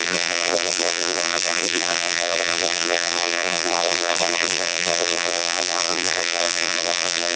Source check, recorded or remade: remade